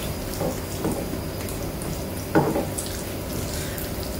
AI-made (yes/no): no